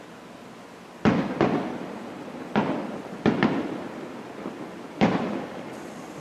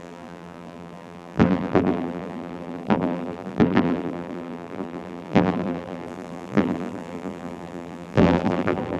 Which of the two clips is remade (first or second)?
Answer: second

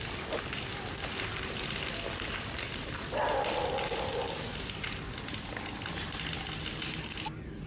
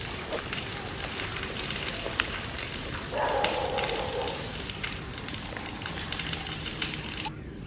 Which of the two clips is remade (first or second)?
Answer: second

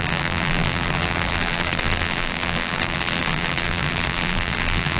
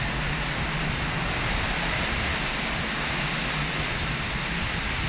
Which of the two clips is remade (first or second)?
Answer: first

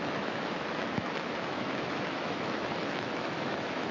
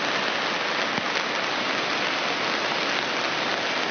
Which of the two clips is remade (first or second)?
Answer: first